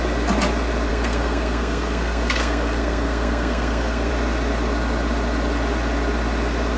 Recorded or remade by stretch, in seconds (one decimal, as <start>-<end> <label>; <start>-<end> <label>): 0.0-0.9 recorded; 0.9-4.1 remade; 4.1-6.8 recorded